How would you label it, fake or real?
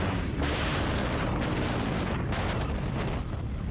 real